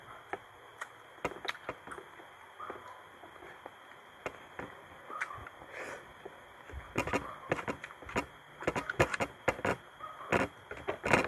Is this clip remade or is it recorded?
recorded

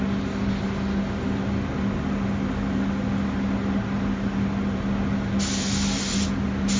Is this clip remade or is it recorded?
recorded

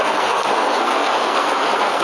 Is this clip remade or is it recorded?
remade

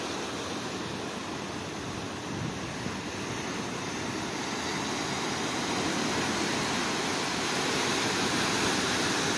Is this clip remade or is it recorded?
recorded